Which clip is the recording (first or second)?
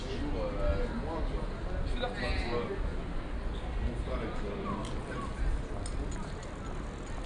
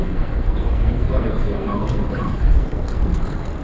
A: first